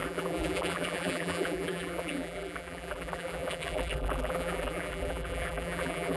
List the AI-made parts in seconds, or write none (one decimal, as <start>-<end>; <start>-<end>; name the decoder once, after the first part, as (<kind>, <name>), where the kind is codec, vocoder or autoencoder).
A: 0.0-6.2 (vocoder, BigVGAN v2)